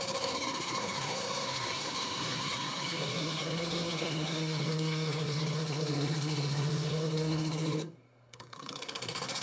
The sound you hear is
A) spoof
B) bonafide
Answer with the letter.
A